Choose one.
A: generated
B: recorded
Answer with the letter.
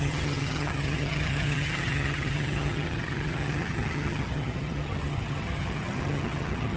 A